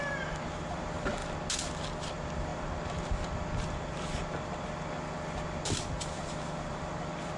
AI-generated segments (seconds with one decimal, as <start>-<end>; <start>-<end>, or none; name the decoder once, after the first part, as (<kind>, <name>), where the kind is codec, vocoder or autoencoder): 0.0-1.2 (vocoder, BigVGAN v2); 2.1-7.4